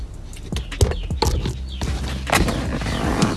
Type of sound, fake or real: real